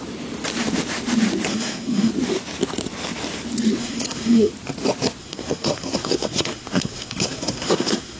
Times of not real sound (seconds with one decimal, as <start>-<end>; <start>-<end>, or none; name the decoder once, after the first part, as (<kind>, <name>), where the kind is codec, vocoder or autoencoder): 1.5-2.1 (codec, SNAC); 3.8-4.5; 5.2-8.2